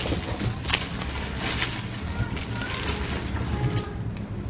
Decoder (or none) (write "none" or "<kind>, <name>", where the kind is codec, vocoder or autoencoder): none